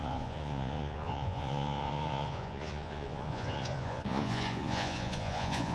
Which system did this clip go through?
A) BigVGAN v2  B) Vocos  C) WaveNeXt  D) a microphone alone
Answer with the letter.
B